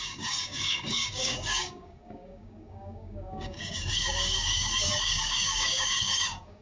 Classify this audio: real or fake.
fake